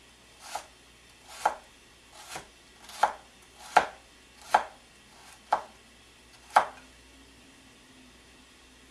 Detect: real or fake real